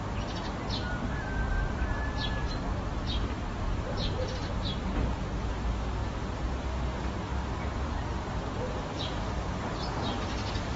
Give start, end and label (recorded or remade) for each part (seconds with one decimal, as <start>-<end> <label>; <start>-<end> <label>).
0.0-10.8 recorded